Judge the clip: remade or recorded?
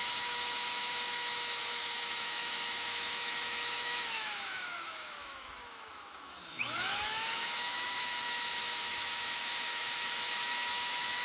remade